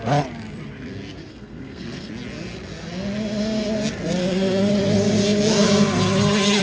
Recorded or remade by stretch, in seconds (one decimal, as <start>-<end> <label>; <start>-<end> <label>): 0.0-1.3 recorded; 1.3-2.1 remade; 2.1-4.2 recorded; 4.2-4.7 remade; 4.7-6.6 recorded